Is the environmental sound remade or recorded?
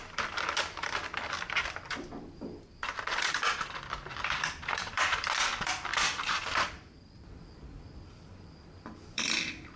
remade